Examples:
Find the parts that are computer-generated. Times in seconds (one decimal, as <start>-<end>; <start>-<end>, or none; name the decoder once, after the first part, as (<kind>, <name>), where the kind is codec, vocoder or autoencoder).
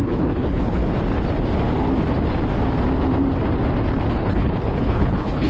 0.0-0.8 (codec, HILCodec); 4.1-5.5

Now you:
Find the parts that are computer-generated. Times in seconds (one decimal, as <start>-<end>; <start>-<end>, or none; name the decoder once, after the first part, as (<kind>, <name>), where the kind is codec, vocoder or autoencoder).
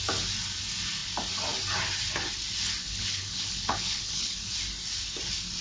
2.8-4.4 (codec, HILCodec)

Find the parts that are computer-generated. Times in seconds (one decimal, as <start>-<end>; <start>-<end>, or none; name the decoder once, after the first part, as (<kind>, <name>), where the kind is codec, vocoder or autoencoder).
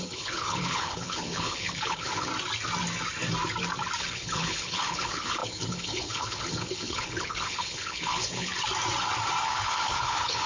0.0-2.3 (codec, HILCodec); 4.0-8.5; 9.4-10.5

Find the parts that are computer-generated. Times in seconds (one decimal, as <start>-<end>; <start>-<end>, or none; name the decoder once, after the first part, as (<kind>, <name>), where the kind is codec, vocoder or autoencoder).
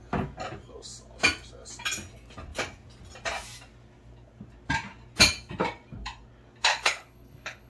6.7-7.7 (codec, HILCodec)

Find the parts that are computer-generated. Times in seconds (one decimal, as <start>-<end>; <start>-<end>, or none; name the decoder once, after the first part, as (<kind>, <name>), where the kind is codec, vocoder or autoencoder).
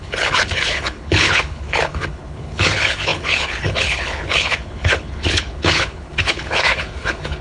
0.0-7.4 (codec, HILCodec)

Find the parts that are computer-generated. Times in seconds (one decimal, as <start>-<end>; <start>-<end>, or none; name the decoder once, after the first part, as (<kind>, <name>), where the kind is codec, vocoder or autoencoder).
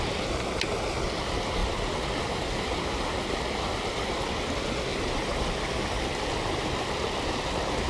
none